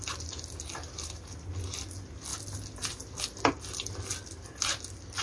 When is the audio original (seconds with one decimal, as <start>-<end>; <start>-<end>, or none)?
0.0-5.2